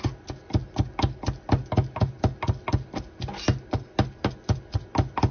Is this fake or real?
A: real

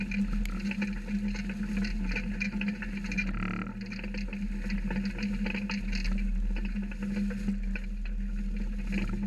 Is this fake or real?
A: real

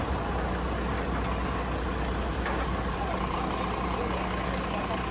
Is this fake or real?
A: real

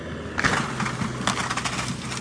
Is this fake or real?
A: real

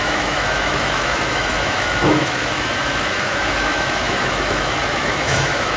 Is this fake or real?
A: fake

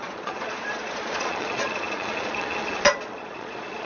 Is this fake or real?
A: fake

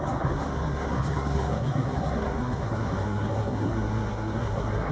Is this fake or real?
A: fake